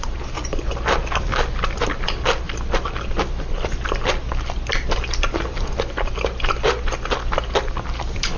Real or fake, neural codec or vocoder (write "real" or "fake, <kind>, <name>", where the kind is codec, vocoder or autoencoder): real